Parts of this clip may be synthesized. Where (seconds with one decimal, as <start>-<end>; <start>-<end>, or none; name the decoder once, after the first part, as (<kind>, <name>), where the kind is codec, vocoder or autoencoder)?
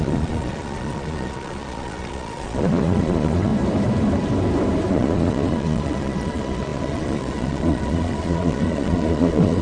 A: 0.0-3.5 (vocoder, Vocos); 4.9-9.6